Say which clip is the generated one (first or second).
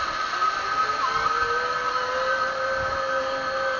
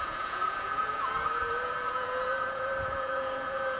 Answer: second